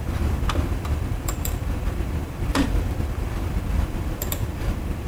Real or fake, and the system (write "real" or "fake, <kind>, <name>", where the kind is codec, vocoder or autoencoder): fake, vocoder, BigVGAN v2